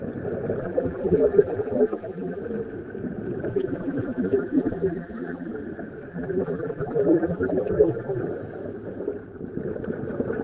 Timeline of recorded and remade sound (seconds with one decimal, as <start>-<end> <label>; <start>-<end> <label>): 0.0-0.6 recorded; 0.6-2.4 remade; 2.4-3.5 recorded; 3.5-5.5 remade; 5.5-6.1 recorded; 6.1-8.2 remade; 8.2-10.4 recorded